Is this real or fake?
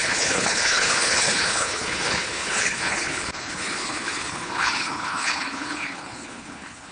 fake